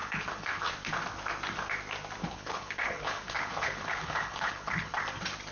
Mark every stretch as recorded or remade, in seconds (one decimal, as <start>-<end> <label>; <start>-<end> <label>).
0.0-0.7 remade; 0.7-2.2 recorded; 2.2-5.0 remade; 5.0-5.5 recorded